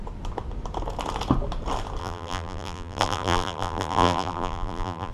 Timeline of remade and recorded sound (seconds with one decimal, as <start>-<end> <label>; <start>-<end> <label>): 0.0-2.0 recorded; 2.0-5.1 remade